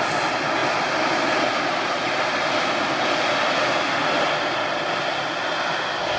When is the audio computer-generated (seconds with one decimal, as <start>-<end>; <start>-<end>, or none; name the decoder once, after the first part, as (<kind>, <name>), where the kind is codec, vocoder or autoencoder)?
none